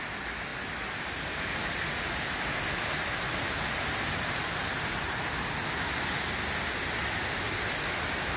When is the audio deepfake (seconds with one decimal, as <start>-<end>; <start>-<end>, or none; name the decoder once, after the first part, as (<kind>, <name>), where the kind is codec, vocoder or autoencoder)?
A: none